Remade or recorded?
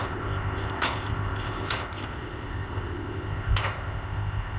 remade